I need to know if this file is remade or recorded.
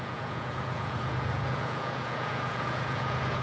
remade